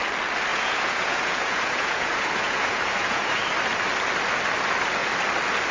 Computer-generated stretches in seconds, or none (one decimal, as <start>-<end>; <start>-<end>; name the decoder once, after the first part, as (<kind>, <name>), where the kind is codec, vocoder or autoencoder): 0.5-3.4 (vocoder, Vocos)